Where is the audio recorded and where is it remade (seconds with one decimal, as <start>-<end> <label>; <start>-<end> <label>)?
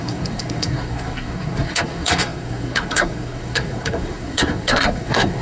0.0-5.4 remade